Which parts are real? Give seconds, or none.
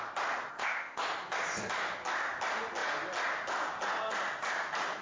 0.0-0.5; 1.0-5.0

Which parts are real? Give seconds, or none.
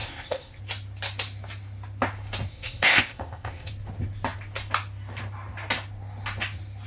0.6-2.5; 3.7-6.9